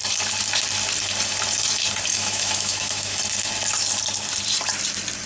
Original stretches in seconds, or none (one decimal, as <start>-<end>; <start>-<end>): 0.0-2.1; 3.2-5.3